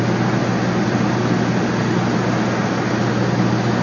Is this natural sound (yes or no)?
yes